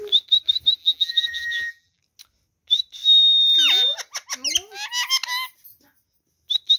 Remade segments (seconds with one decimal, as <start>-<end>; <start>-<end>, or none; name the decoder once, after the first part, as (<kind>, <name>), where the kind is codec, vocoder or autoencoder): 0.8-2.0 (vocoder, BigVGAN v2)